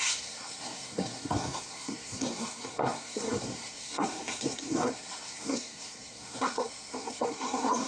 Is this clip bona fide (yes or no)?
no